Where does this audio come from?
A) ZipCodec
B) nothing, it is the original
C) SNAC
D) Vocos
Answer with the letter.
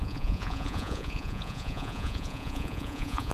D